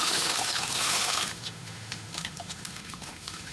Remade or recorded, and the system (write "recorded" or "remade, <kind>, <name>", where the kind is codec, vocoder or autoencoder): remade, autoencoder, DAC-VAE